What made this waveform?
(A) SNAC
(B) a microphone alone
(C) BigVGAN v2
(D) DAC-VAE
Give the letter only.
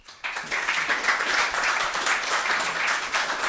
B